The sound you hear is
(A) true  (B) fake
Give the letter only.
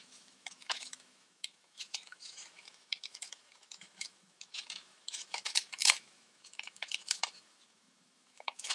B